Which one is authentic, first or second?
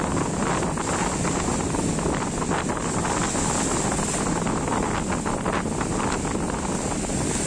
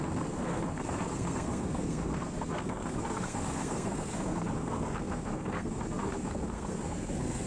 first